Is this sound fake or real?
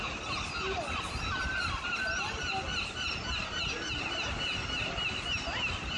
real